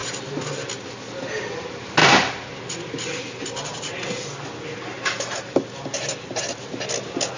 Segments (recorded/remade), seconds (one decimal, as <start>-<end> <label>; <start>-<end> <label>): 0.0-7.4 recorded